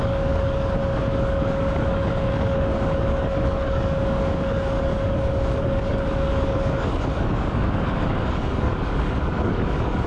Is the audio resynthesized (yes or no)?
yes